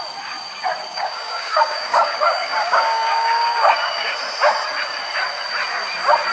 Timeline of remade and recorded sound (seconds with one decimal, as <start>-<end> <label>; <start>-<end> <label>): 0.0-0.9 recorded; 0.9-4.1 remade; 4.1-6.3 recorded